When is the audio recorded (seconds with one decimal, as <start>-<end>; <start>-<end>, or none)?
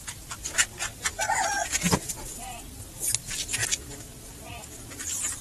0.0-5.4